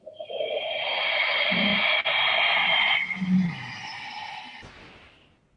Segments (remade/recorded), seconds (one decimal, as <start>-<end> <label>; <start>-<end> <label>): 0.0-5.6 recorded